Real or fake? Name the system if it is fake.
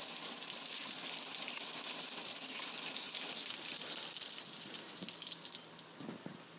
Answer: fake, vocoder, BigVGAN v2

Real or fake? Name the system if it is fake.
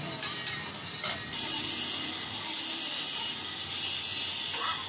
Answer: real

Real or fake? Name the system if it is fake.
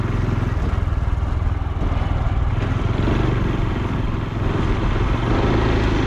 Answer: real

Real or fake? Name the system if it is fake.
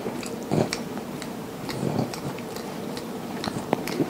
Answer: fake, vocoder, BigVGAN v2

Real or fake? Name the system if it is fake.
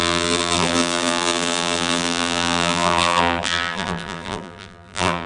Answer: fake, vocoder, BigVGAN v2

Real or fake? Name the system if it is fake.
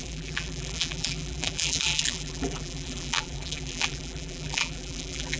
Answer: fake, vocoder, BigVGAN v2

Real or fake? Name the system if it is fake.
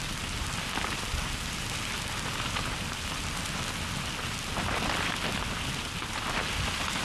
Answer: real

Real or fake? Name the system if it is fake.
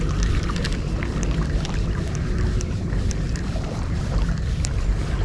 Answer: fake, vocoder, BigVGAN v2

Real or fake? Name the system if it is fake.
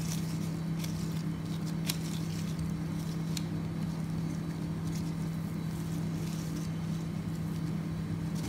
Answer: real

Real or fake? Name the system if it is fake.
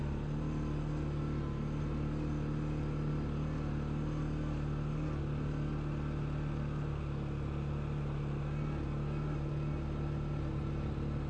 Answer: real